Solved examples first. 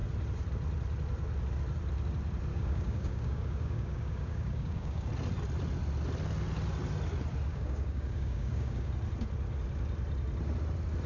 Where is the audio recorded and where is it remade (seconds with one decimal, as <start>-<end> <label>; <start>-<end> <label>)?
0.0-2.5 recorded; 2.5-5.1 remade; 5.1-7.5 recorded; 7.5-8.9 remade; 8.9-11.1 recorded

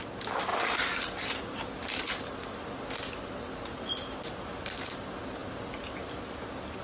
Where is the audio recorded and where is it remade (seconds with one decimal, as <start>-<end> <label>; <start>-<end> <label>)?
0.0-6.8 recorded

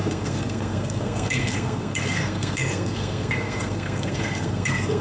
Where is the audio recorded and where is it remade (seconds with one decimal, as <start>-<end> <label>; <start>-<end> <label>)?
0.0-5.0 remade